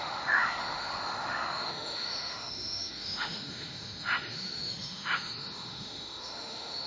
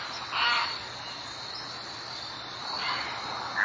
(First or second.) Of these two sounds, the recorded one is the second